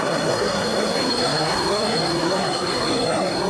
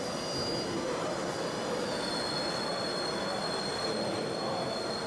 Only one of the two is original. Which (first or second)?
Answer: second